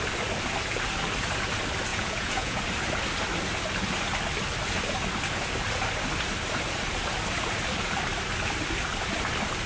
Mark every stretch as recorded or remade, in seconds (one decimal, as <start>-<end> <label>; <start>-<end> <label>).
0.0-1.9 recorded; 1.9-2.6 remade; 2.6-9.7 recorded